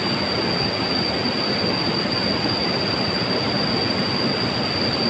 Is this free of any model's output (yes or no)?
yes